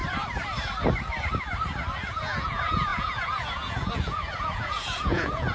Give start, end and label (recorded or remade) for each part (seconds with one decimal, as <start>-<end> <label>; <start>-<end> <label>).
0.0-2.1 recorded; 2.1-5.5 remade